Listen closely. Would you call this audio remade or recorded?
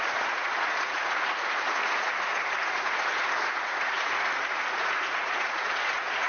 remade